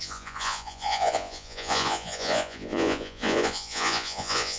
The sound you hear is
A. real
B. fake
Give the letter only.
B